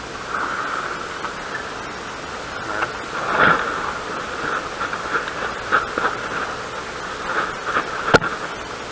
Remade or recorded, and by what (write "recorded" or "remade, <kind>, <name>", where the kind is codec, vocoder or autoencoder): recorded